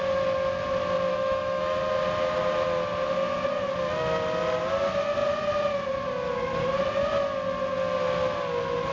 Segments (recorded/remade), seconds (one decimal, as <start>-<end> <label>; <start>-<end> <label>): 0.0-1.1 recorded; 1.1-1.8 remade; 1.8-8.9 recorded